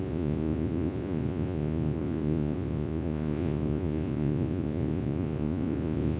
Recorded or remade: remade